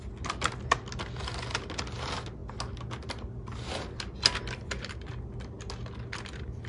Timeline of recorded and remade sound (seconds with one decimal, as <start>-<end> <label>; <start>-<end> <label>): 0.0-6.7 recorded